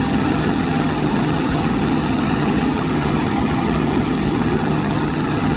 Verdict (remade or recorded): remade